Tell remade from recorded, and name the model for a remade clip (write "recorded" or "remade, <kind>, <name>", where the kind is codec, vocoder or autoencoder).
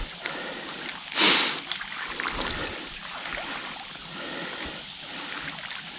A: recorded